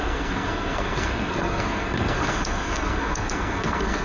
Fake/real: fake